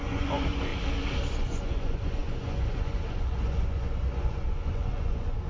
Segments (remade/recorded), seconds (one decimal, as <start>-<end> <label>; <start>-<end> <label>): 0.0-0.7 remade; 0.7-1.4 recorded; 1.4-5.5 remade